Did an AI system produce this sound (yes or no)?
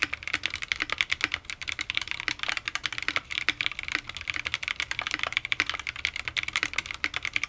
no